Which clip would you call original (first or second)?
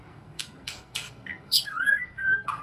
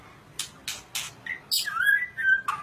second